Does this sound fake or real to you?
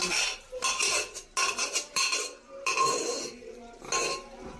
real